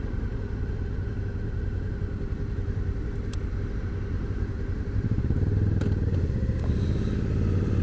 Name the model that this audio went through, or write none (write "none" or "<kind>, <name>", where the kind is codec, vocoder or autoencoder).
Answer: none